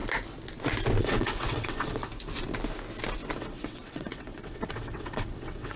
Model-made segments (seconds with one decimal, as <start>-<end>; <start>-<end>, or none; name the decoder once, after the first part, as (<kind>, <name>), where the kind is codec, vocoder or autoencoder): 1.0-2.0 (vocoder, WaveNeXt); 3.4-5.8